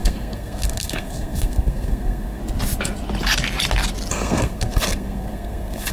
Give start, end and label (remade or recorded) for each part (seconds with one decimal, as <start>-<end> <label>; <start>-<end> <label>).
0.0-2.4 remade; 2.4-4.1 recorded; 4.1-5.9 remade